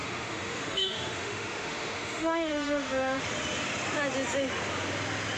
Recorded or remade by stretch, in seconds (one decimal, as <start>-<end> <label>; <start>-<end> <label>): 0.0-3.2 remade; 3.2-5.4 recorded